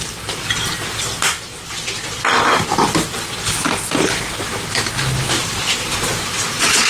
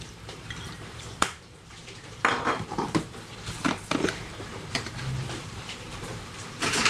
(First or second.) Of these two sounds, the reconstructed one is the second